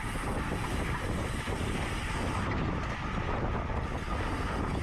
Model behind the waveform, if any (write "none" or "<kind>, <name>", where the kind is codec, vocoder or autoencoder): none